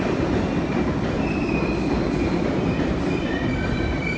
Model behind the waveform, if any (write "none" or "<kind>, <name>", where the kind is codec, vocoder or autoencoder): vocoder, BigVGAN v2